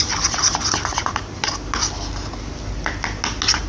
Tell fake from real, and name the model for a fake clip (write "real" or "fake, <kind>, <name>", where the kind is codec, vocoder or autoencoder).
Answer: real